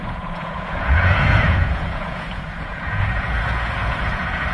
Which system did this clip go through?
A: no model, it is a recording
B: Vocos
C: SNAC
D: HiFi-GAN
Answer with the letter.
B